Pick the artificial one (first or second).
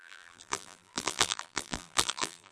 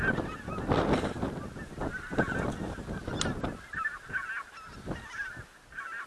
first